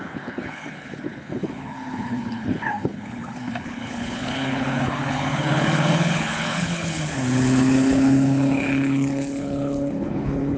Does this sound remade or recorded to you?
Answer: remade